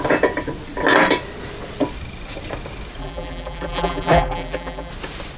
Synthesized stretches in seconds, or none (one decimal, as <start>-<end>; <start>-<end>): 3.0-4.9